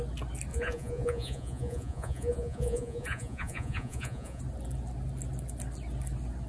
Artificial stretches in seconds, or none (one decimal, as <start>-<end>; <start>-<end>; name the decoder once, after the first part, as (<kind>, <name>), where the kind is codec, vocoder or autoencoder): 0.5-4.4 (vocoder, Vocos)